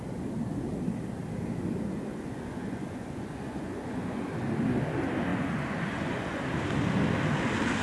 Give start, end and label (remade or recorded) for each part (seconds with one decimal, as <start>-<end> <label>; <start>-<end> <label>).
0.0-2.1 recorded; 2.1-4.2 remade; 4.2-5.3 recorded; 5.3-6.4 remade; 6.4-7.8 recorded